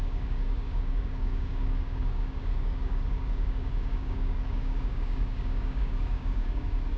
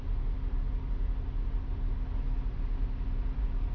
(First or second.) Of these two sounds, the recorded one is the second